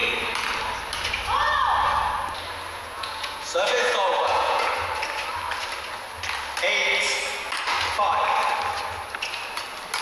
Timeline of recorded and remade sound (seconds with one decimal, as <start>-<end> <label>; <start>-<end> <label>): 0.0-2.7 recorded; 2.7-4.7 remade; 4.7-10.0 recorded